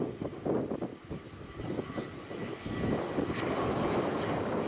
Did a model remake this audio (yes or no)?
no